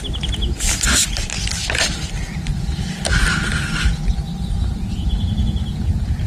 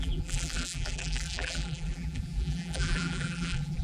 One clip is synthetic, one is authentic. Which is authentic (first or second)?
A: first